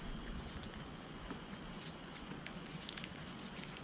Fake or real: fake